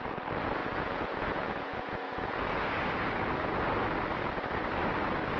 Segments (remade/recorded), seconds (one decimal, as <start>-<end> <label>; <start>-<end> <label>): 0.0-0.6 recorded; 0.6-2.7 remade; 2.7-5.4 recorded